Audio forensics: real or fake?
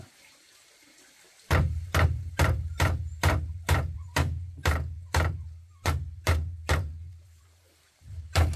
fake